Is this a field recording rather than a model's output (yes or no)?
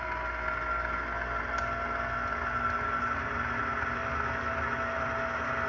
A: yes